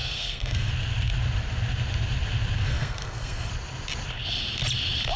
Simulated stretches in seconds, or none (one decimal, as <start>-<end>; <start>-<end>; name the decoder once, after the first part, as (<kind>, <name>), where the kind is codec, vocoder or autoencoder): 0.0-0.7 (codec, SNAC); 2.7-3.5